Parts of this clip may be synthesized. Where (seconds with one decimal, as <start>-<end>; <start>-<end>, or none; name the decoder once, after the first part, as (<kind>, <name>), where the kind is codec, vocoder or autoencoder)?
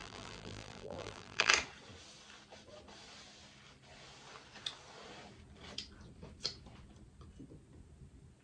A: 0.0-1.5 (vocoder, BigVGAN v2)